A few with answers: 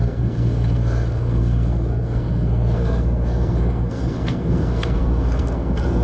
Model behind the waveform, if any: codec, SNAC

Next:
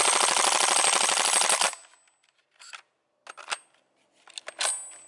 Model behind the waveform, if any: none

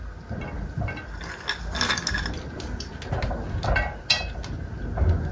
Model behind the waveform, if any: none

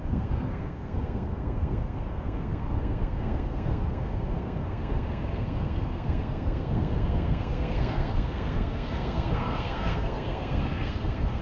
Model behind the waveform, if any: codec, SNAC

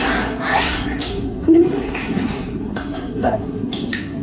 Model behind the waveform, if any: codec, SNAC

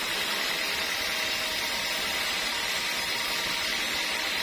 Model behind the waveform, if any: none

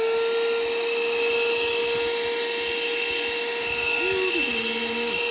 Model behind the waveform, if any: none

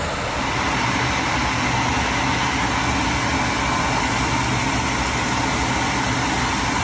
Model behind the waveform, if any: none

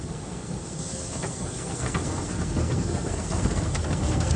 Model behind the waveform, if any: codec, SNAC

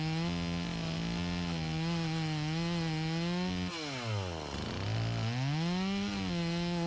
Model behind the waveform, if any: none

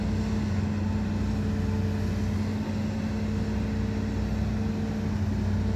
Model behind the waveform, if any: none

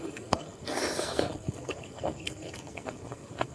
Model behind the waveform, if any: codec, SNAC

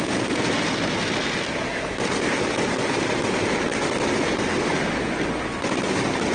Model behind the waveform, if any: none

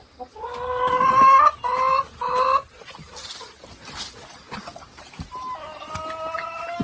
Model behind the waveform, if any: none